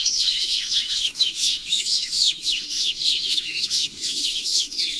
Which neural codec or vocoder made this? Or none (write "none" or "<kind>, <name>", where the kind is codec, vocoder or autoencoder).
autoencoder, DAC-VAE